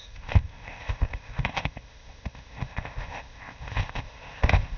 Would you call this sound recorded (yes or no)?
no